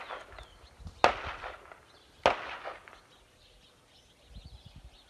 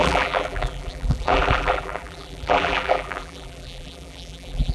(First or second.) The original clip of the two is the first